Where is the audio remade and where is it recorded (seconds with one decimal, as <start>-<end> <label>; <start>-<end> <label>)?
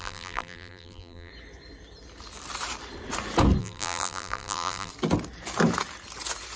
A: 0.0-1.3 remade; 1.3-3.6 recorded; 3.6-4.9 remade; 4.9-6.6 recorded